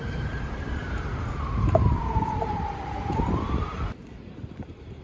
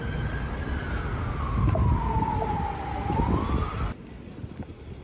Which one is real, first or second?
second